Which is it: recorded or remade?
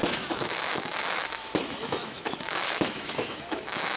remade